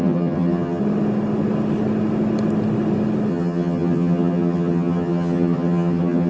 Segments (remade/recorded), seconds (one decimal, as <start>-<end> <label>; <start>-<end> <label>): 0.0-0.8 remade; 0.8-3.3 recorded; 3.3-6.3 remade